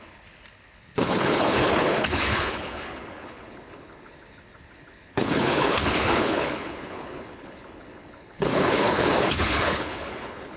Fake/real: fake